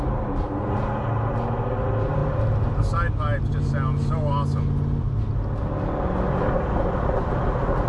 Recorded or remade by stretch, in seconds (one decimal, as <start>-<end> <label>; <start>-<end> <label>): 0.0-7.9 recorded